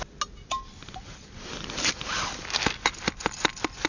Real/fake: real